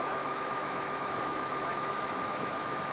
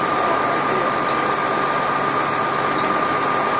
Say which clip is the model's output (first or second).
first